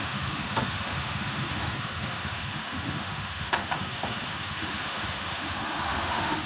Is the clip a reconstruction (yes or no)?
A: yes